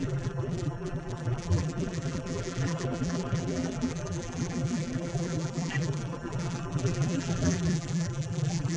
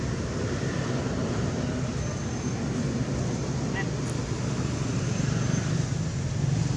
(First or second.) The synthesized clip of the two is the first